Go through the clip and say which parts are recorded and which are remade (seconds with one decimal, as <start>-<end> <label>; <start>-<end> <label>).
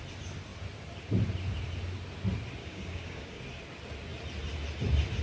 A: 0.0-2.6 recorded; 2.6-3.4 remade; 3.4-5.2 recorded